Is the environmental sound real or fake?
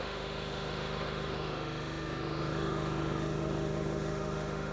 fake